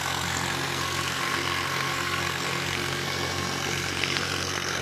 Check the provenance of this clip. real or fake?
fake